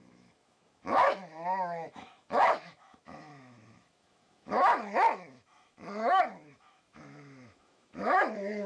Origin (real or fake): fake